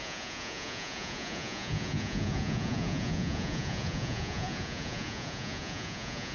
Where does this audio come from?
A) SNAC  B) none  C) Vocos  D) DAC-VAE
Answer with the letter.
C